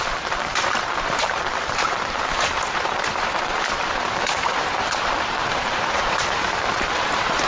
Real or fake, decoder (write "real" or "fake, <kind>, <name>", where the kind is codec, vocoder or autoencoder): fake, vocoder, BigVGAN v2